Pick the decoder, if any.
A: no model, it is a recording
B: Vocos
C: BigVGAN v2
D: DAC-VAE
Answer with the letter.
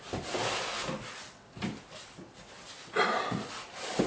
A